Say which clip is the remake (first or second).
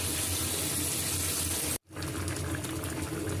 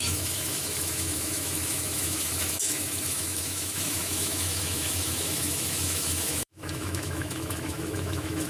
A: second